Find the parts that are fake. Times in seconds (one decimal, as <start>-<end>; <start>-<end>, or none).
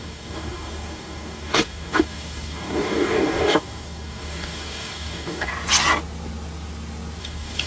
0.0-5.5; 7.2-7.7